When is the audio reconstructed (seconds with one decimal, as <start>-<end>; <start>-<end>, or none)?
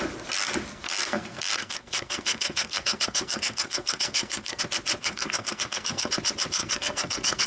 0.7-4.6; 5.0-6.1; 6.6-7.5